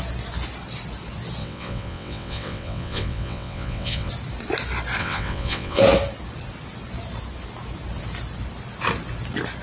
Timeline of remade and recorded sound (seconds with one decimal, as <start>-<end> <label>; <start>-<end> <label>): 0.0-1.4 recorded; 1.4-4.1 remade; 4.1-5.0 recorded; 5.0-5.8 remade; 5.8-9.6 recorded